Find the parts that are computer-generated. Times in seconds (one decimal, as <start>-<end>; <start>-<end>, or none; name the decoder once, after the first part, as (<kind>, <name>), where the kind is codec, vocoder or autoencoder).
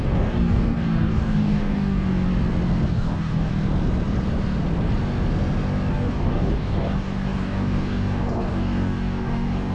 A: 0.0-2.1 (codec, DAC); 2.9-3.5; 5.9-9.7